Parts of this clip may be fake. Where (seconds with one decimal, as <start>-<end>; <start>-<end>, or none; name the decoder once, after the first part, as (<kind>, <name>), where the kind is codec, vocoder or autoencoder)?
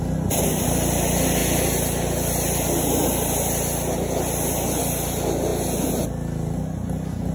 none